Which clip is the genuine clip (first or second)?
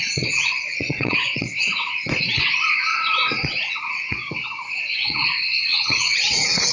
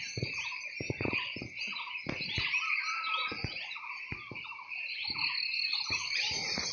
second